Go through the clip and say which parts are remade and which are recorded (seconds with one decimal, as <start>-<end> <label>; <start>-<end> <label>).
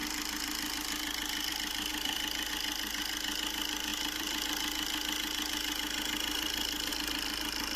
0.0-1.5 remade; 1.5-1.9 recorded; 1.9-2.5 remade; 2.5-3.9 recorded; 3.9-6.9 remade; 6.9-7.8 recorded